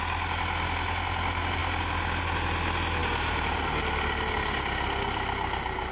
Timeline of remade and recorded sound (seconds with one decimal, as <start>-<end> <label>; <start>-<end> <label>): 0.0-5.9 recorded